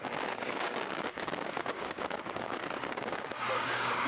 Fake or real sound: fake